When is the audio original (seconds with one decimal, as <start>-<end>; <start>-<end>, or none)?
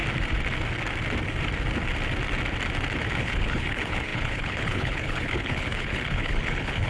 0.0-3.2